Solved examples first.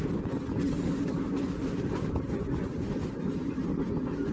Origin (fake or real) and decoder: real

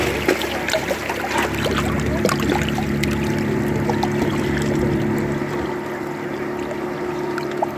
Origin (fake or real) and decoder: real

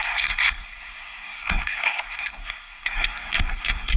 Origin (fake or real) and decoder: fake, codec, SNAC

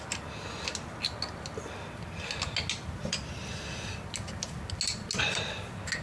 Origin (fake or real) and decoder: real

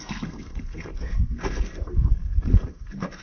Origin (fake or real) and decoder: fake, codec, SNAC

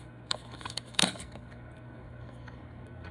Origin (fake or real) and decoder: fake, codec, SNAC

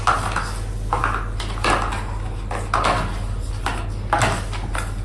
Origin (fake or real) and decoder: real